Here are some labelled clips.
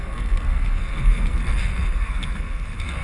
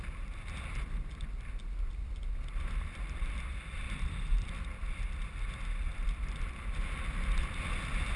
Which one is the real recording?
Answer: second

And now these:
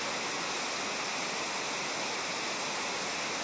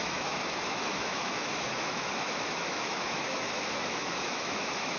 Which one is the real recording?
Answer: first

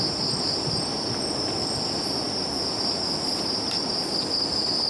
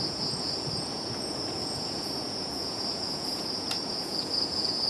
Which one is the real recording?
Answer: first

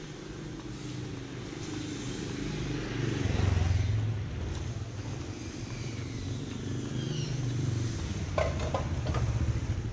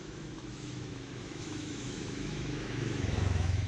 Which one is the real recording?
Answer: first